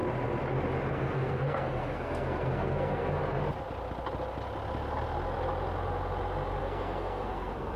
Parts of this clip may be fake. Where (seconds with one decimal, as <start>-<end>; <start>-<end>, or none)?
0.9-3.2; 6.6-7.8